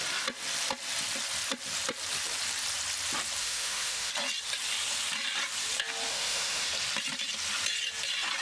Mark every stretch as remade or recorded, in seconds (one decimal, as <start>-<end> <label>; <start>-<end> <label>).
0.0-3.4 recorded; 3.4-4.1 remade; 4.1-6.1 recorded; 6.1-6.7 remade; 6.7-8.4 recorded